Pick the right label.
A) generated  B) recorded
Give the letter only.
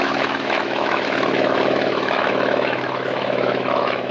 A